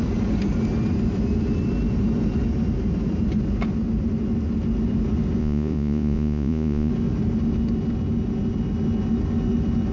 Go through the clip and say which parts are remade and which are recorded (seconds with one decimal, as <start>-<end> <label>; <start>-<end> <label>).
0.0-5.4 recorded; 5.4-6.9 remade; 6.9-9.9 recorded